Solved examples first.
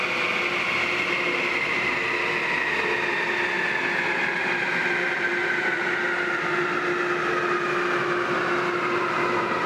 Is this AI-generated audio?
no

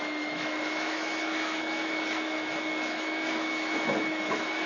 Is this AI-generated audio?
yes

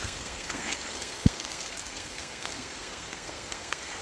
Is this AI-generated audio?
yes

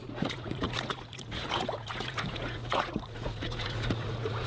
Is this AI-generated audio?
yes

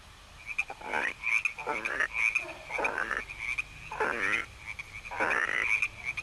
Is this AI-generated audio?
no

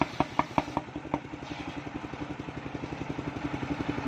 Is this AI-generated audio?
yes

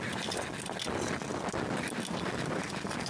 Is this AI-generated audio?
no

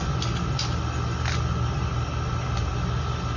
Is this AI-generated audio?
no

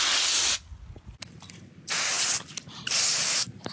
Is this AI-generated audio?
no